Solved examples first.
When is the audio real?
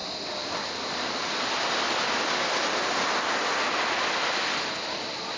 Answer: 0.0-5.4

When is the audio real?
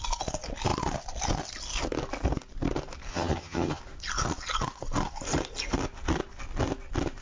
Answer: 0.0-3.1; 3.8-7.2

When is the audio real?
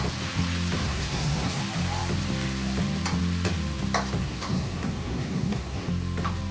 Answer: 0.0-0.8; 1.6-4.2; 5.9-6.5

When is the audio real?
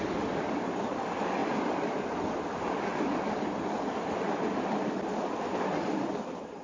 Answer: 0.0-6.6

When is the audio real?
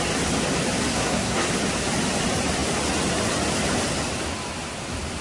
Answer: 0.0-0.9; 1.5-5.2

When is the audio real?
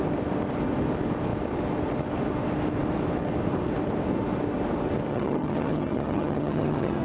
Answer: 0.0-5.1